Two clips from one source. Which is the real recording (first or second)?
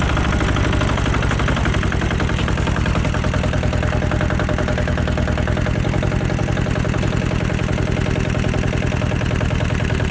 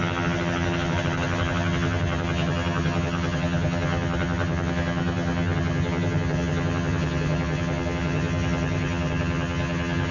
first